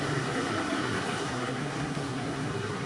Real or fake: fake